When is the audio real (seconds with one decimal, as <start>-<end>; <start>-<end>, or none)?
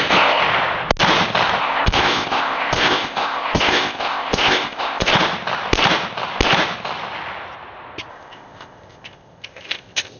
0.4-1.6; 5.1-8.1